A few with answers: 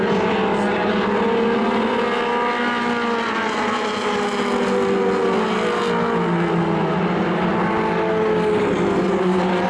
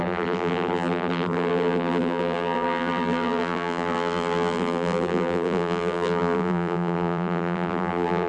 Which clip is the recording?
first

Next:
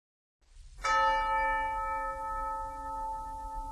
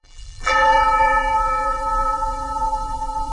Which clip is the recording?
first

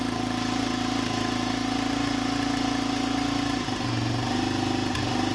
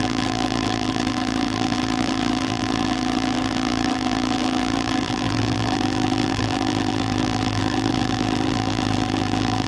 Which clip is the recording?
first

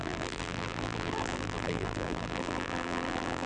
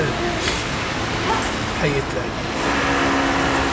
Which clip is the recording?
second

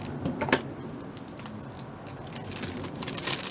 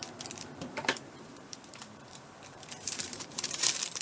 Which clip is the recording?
first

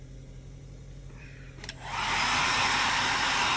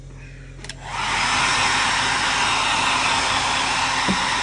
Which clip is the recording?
second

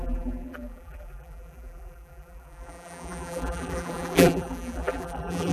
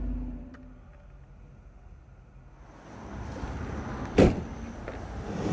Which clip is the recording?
second